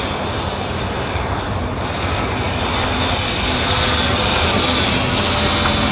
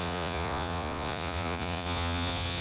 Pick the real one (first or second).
first